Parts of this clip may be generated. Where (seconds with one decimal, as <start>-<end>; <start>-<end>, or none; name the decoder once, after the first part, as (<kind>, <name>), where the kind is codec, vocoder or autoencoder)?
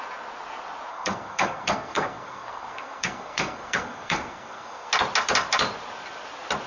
0.9-4.9 (codec, SNAC)